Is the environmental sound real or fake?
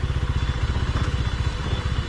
fake